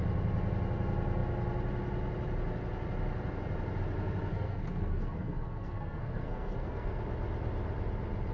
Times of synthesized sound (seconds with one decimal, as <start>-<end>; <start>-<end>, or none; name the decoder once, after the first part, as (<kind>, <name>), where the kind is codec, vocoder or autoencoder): 4.3-7.0 (codec, SNAC)